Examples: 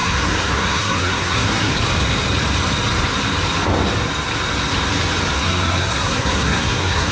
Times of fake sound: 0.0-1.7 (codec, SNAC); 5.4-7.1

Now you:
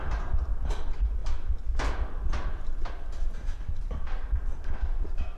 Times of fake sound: none

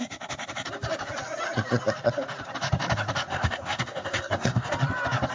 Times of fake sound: 3.3-4.7 (codec, SNAC)

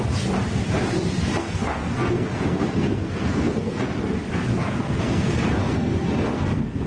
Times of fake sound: 1.4-3.8 (codec, SNAC); 4.5-6.9